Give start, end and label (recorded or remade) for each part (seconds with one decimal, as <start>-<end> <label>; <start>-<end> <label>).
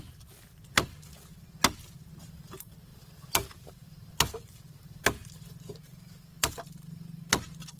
0.0-2.9 recorded; 2.9-5.4 remade; 5.4-7.8 recorded